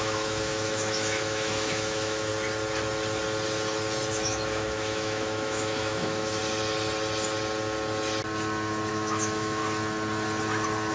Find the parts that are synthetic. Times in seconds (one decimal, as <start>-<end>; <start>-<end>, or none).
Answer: 0.0-2.3; 4.1-6.4; 8.9-9.6

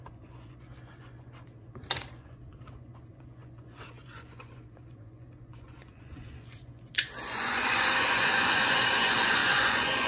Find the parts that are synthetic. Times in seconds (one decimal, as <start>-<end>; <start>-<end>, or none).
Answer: 0.0-10.1

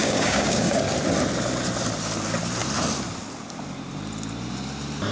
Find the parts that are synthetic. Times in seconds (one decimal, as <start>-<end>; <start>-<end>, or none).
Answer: 0.0-0.8

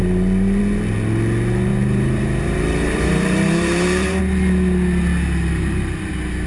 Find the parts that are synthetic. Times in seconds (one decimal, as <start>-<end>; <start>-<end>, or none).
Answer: 1.7-4.2

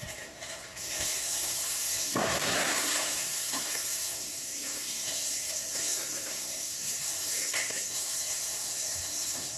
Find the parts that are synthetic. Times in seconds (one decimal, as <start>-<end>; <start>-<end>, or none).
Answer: 0.0-9.6

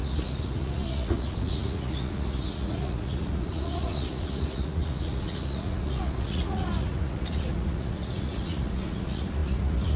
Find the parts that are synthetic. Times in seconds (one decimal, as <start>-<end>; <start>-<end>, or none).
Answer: 0.0-10.0

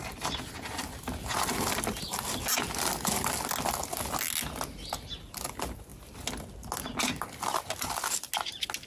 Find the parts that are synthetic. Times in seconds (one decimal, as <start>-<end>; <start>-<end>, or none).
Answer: none

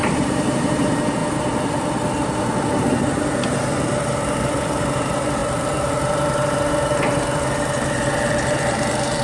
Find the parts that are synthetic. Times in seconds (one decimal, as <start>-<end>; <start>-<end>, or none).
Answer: 0.0-9.2